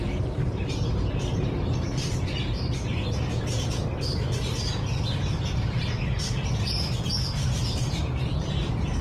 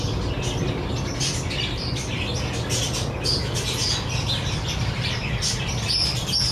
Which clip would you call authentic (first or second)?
second